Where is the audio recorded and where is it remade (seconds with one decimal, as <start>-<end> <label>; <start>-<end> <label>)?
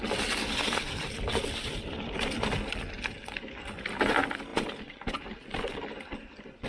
0.0-6.7 recorded